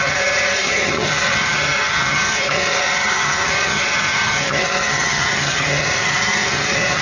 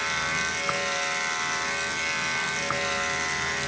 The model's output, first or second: first